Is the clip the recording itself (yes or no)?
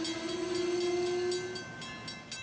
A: yes